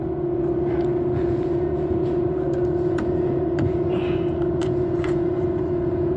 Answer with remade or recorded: remade